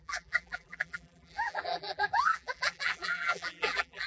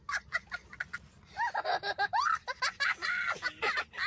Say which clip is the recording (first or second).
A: second